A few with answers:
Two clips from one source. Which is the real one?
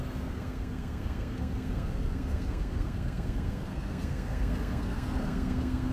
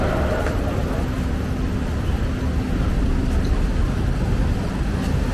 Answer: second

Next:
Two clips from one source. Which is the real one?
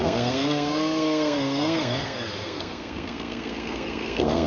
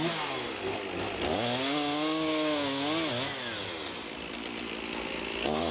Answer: second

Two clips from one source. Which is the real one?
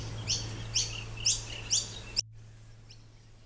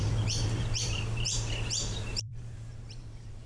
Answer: first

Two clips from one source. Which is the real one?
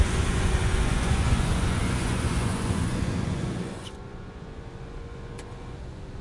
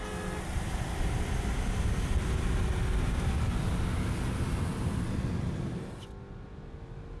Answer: second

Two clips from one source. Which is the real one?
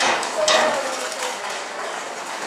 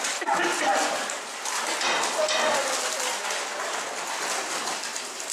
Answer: second